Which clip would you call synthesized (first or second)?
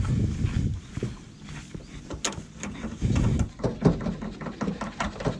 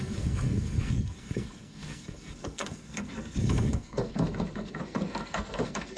second